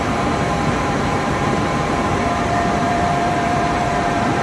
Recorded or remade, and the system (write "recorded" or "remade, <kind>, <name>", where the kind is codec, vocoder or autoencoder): remade, vocoder, BigVGAN v2